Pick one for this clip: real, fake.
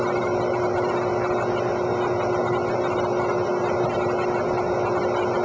real